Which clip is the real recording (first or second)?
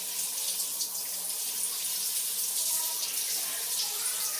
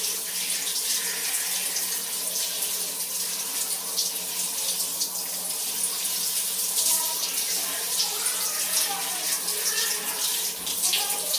second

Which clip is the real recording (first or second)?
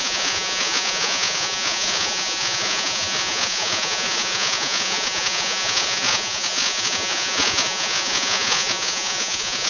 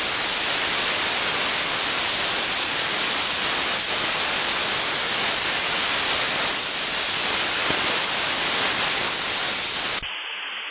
second